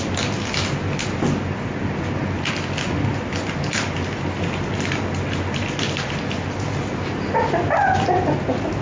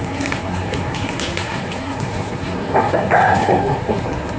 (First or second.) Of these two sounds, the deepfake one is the second